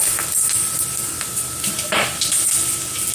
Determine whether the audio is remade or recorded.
recorded